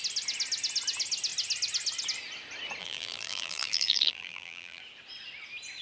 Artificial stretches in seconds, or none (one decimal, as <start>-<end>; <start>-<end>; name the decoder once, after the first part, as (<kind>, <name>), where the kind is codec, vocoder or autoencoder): 2.8-4.8 (vocoder, BigVGAN v2)